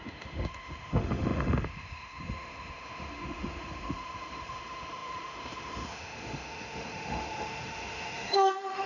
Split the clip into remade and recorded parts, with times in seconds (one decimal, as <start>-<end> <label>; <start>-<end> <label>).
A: 0.0-8.9 remade